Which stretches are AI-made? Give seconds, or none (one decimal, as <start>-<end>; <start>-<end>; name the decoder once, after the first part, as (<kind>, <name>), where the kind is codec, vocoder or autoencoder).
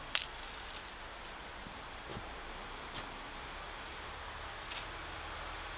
4.2-4.7 (codec, SNAC)